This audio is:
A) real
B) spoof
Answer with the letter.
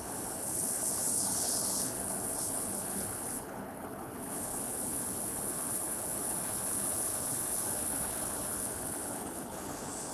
B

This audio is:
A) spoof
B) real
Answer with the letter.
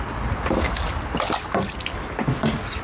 B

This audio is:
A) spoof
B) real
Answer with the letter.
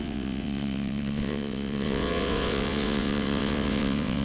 A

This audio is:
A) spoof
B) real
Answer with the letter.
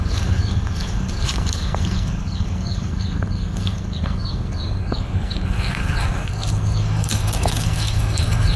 A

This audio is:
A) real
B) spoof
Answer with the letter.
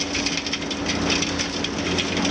A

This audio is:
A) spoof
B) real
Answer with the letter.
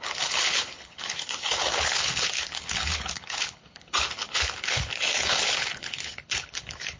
A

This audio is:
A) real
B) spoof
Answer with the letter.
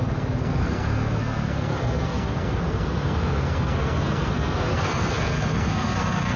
B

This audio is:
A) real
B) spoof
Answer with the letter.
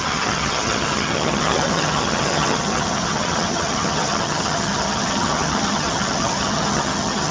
B